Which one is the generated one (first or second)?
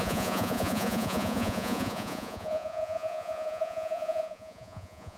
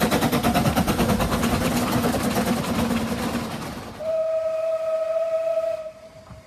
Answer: first